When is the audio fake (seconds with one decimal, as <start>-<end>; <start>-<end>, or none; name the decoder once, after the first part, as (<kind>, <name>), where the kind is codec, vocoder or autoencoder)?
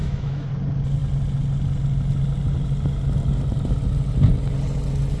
0.0-0.5 (autoencoder, DAC-VAE)